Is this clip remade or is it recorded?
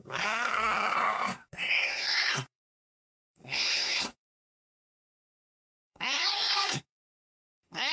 remade